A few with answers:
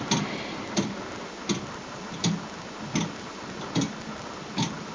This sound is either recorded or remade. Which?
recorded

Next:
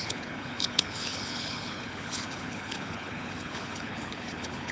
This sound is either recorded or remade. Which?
remade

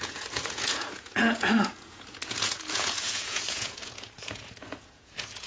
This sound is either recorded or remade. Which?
remade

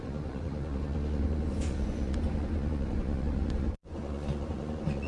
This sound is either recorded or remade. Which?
remade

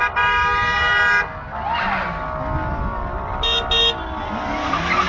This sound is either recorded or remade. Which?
recorded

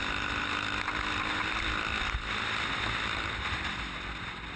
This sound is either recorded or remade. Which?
recorded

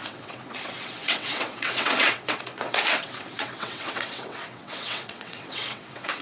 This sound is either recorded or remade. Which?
remade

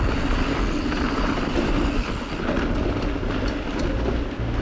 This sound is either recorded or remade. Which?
recorded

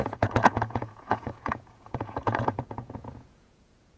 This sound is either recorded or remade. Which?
remade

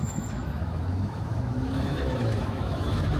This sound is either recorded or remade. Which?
remade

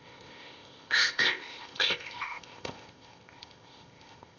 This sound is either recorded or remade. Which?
remade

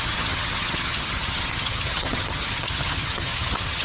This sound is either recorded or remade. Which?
remade